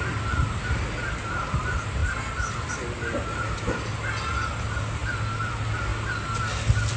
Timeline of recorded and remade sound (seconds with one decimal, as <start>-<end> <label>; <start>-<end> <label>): 0.0-7.0 recorded